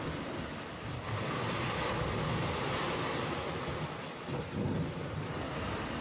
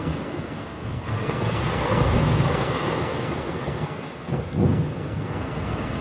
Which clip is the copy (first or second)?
second